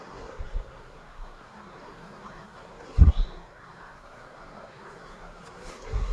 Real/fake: fake